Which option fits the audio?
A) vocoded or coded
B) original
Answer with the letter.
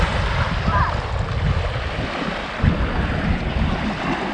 B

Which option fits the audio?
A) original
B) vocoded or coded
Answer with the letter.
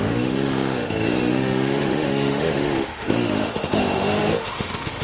B